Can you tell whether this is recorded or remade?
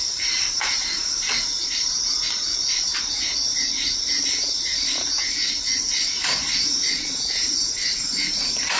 remade